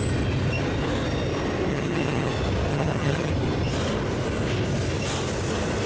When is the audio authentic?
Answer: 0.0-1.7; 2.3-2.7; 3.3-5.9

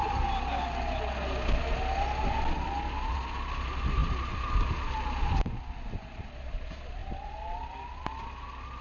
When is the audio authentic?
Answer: 0.0-8.8

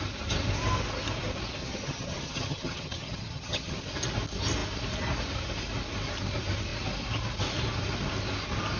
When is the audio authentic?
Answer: 0.0-1.6; 3.8-8.8